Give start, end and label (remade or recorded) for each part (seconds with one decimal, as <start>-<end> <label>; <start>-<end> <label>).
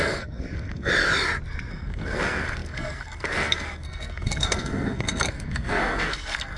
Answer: 0.0-0.9 remade; 0.9-1.7 recorded; 1.7-6.6 remade